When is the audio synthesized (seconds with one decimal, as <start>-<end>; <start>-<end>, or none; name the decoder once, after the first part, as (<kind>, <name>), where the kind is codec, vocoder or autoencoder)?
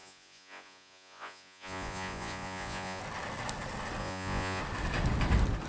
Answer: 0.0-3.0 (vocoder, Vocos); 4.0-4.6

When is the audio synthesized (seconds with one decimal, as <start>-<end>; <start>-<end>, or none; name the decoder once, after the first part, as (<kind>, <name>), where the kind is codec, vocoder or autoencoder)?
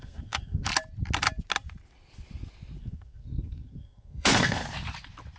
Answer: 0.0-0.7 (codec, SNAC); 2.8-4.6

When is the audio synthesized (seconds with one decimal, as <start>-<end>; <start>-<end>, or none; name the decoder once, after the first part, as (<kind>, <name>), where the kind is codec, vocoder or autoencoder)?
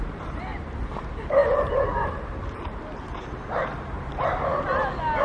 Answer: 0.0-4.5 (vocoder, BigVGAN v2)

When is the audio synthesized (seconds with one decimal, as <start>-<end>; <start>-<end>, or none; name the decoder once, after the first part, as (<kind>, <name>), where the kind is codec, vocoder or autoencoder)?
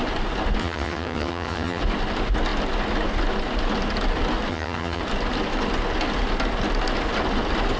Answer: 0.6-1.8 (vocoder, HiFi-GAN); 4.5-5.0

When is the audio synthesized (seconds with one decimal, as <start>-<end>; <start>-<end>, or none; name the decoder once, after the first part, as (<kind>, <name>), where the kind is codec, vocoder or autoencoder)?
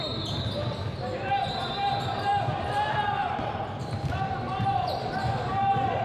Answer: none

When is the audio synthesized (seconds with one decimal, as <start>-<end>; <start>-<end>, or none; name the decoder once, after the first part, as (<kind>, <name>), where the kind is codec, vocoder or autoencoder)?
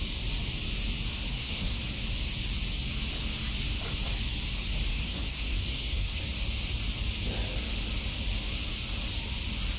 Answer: 1.3-1.8 (codec, SNAC); 4.9-6.2